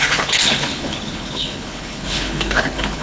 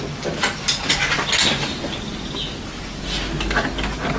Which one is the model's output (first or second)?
first